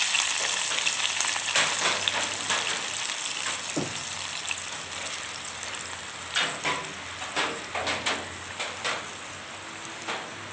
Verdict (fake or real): real